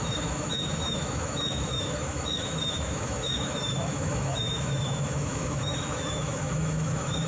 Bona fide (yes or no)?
no